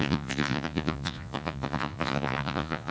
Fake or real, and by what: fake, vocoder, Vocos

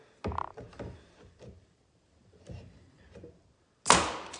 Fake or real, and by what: real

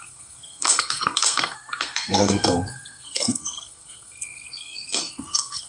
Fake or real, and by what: fake, codec, SNAC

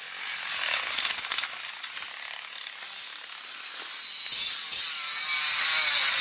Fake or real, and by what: real